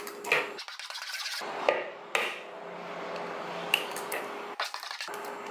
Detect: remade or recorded recorded